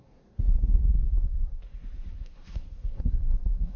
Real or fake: fake